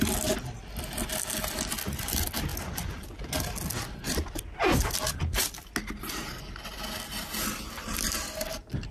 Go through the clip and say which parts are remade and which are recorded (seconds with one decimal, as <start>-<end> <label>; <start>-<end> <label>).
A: 0.0-8.9 recorded